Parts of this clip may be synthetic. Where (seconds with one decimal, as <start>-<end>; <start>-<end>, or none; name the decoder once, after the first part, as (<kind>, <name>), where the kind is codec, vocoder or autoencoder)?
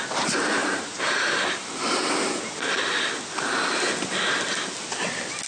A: none